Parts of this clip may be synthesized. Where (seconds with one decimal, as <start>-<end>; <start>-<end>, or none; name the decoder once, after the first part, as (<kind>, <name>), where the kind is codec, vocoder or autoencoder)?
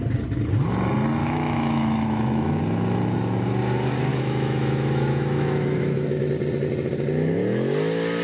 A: 1.2-2.6 (autoencoder, DAC-VAE); 4.1-6.3